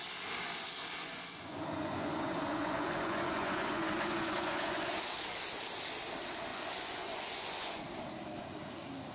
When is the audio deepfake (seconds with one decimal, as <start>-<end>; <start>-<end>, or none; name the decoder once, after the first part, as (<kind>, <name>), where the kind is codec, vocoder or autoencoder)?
1.0-4.9 (vocoder, Vocos); 6.5-7.8